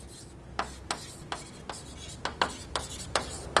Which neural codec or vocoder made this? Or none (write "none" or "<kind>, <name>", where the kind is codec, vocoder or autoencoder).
none